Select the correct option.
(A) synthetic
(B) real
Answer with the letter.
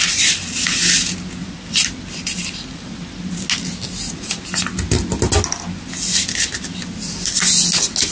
B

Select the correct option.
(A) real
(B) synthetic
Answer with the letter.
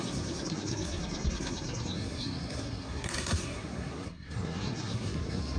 B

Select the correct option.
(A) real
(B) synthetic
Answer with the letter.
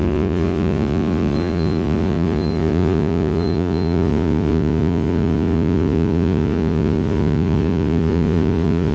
B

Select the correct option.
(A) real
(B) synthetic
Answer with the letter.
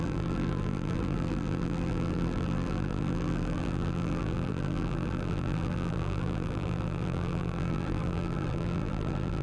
B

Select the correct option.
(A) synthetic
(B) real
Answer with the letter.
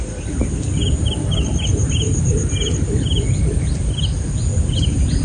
B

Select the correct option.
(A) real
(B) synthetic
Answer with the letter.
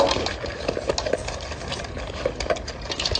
A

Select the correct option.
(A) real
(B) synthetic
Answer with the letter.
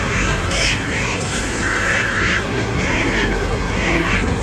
B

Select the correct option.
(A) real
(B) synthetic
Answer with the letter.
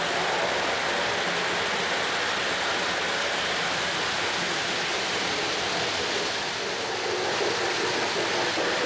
A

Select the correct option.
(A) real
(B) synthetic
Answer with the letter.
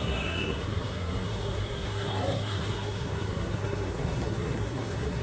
B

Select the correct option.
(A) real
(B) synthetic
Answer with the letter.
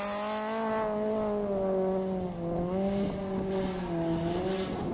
A